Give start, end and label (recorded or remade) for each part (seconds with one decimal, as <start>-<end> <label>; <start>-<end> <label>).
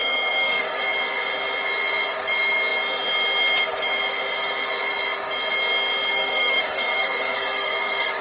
0.0-0.8 remade; 0.8-6.1 recorded; 6.1-8.2 remade